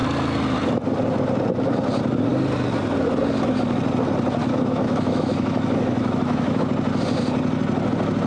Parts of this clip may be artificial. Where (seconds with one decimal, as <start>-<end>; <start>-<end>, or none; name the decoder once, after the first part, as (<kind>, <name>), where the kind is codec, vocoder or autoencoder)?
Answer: 4.4-6.6 (autoencoder, DAC-VAE)